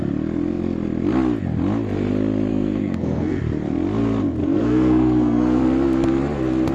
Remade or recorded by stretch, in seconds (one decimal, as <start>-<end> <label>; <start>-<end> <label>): 0.0-2.5 recorded; 2.5-3.4 remade; 3.4-4.4 recorded; 4.4-5.6 remade; 5.6-6.7 recorded